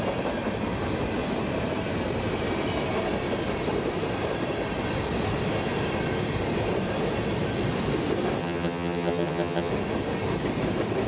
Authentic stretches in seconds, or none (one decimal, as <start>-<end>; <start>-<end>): 0.0-8.4; 9.7-11.1